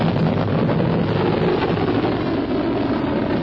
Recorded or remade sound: recorded